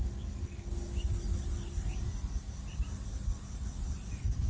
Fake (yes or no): no